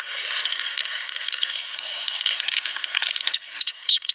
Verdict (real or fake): fake